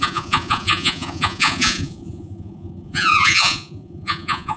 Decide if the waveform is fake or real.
fake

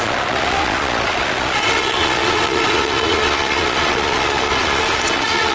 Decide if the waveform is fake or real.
fake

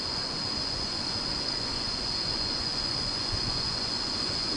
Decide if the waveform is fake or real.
fake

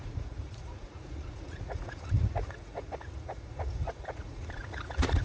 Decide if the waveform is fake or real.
fake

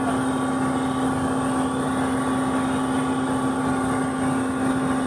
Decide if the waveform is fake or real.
real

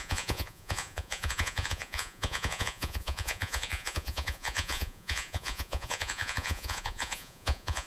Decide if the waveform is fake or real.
fake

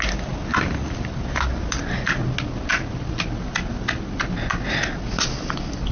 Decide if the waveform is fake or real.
real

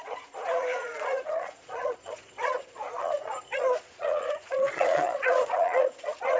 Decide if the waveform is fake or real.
fake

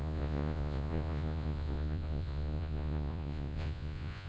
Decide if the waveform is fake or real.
fake